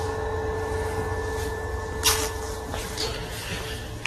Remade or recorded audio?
recorded